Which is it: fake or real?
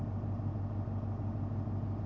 real